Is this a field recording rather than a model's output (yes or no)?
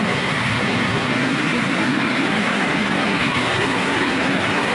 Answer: no